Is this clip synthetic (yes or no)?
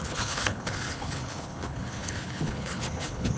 yes